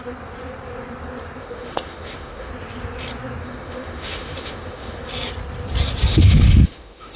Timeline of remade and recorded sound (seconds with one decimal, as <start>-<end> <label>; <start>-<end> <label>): 0.0-1.4 recorded; 1.4-2.5 remade; 2.5-3.4 recorded; 3.4-5.0 remade; 5.0-6.1 recorded; 6.1-7.2 remade